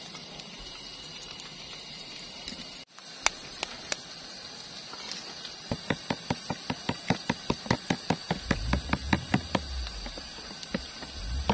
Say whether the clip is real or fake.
real